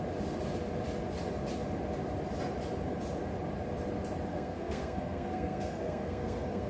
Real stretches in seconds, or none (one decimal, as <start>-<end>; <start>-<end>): 0.0-4.3